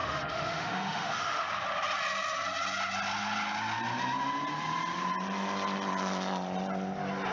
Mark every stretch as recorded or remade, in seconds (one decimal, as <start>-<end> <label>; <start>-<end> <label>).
0.0-1.5 remade; 1.5-7.3 recorded